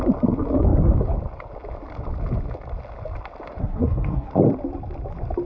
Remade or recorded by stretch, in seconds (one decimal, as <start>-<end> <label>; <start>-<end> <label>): 0.0-3.6 recorded; 3.6-4.3 remade; 4.3-5.5 recorded